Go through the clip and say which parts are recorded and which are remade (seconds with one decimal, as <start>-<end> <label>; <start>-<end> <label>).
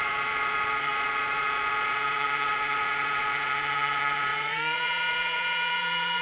0.0-6.2 remade